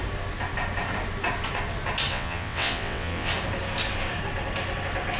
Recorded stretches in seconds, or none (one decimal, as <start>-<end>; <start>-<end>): 0.0-2.1; 3.3-5.2

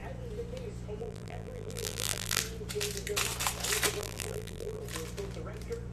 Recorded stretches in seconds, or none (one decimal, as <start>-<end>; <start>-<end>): 0.0-1.0; 2.4-4.0; 4.8-5.9